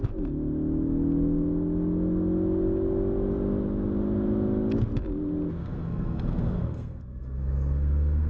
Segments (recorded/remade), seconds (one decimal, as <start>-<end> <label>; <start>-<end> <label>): 0.0-5.6 recorded; 5.6-8.3 remade